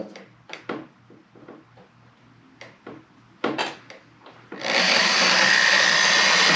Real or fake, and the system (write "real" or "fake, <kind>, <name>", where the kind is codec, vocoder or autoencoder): real